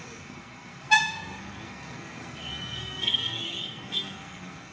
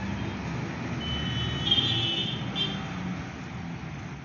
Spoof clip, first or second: first